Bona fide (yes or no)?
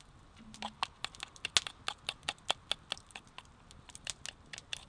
yes